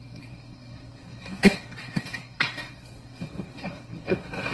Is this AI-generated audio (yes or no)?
yes